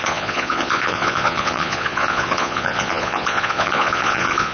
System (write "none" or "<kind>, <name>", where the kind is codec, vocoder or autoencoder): vocoder, Vocos